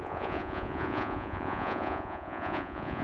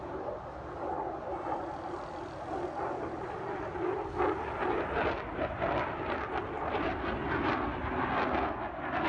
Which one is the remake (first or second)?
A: first